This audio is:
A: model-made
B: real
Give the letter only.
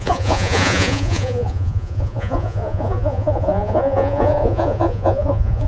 A